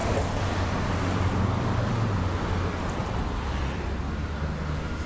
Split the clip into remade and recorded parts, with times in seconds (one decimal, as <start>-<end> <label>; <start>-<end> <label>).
0.0-1.9 remade; 1.9-3.0 recorded; 3.0-4.0 remade; 4.0-5.1 recorded